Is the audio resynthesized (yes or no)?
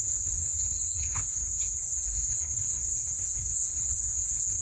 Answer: yes